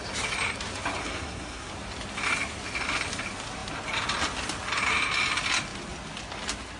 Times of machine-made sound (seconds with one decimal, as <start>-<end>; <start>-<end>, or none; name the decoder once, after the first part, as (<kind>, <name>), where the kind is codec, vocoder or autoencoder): 1.0-1.7 (codec, SNAC)